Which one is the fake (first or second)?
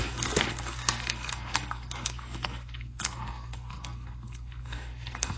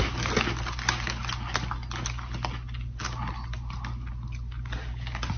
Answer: first